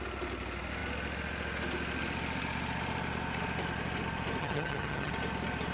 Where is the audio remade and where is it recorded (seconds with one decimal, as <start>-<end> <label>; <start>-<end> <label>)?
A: 0.0-4.4 recorded; 4.4-5.1 remade; 5.1-5.7 recorded